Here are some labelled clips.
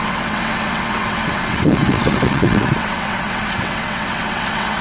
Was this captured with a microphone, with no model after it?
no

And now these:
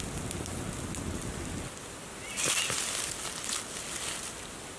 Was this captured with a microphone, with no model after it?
yes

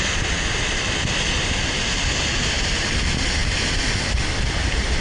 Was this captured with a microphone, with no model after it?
yes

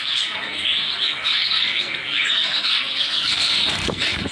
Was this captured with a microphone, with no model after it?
no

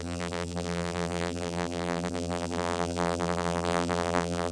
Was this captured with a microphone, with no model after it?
no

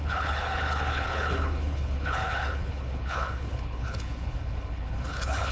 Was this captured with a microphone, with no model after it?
no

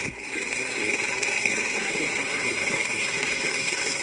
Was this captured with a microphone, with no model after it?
no